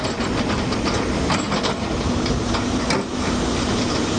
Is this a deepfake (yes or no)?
no